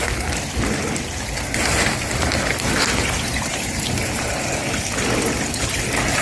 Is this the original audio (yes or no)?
yes